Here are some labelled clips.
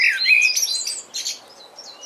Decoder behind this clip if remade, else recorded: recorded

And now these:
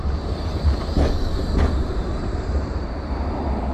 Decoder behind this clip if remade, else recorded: remade, vocoder, BigVGAN v2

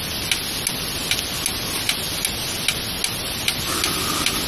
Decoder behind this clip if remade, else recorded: recorded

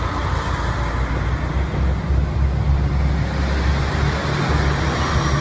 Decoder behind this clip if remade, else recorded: recorded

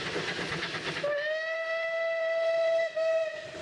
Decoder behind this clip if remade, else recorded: recorded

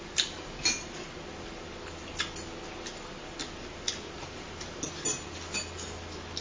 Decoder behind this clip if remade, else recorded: recorded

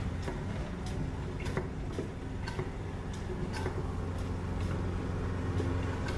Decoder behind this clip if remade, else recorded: recorded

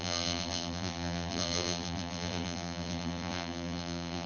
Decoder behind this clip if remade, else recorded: remade, vocoder, BigVGAN v2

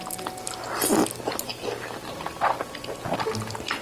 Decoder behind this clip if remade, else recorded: recorded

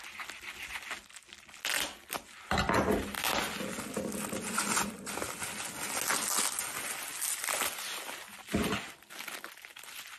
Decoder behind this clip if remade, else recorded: recorded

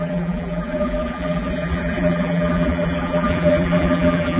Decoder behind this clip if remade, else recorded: remade, vocoder, BigVGAN v2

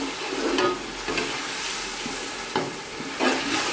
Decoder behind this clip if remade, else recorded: recorded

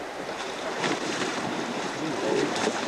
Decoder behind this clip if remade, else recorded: remade, vocoder, BigVGAN v2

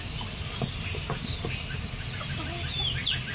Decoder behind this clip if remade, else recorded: recorded